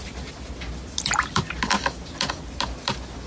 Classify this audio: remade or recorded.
recorded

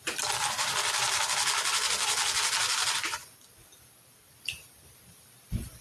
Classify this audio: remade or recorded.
recorded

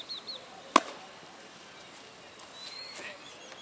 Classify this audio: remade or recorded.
recorded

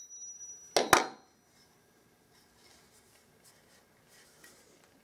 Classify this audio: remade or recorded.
recorded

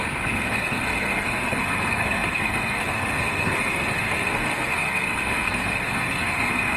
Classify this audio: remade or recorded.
remade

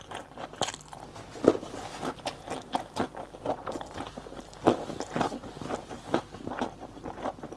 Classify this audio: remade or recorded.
recorded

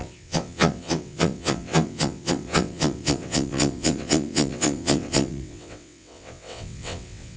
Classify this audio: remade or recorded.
remade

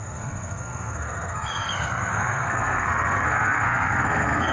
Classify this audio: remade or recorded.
remade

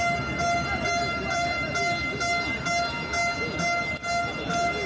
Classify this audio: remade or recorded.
recorded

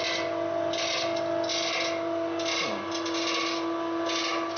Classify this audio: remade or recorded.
recorded